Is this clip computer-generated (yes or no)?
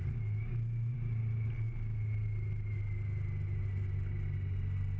no